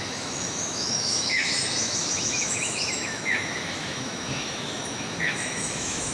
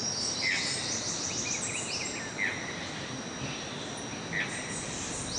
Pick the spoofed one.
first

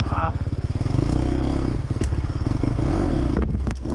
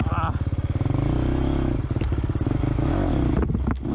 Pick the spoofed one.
first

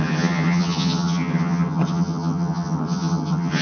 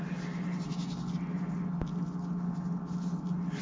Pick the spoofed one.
first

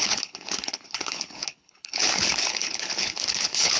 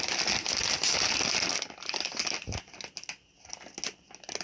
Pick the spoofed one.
first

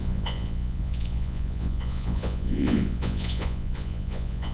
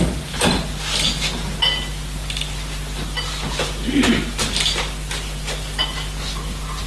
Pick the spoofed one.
first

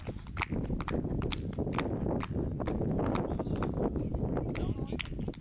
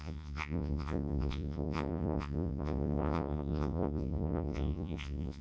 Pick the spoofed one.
second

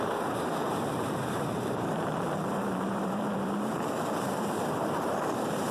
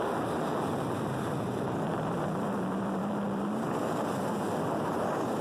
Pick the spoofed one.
first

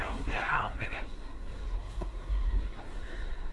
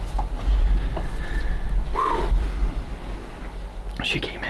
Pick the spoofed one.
first